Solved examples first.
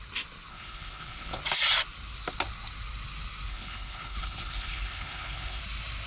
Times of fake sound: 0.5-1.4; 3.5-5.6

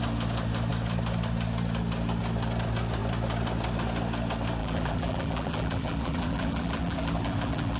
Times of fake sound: 4.6-7.8